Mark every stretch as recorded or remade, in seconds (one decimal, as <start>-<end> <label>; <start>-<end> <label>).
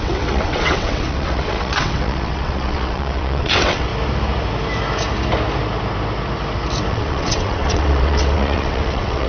0.0-3.9 remade; 3.9-6.9 recorded; 6.9-9.3 remade